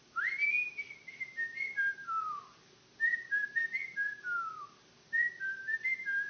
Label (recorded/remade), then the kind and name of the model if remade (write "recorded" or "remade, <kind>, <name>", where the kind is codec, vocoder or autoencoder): recorded